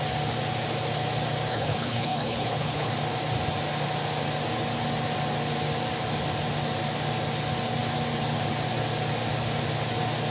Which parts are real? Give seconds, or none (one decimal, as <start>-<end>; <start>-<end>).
0.0-1.5; 2.9-10.3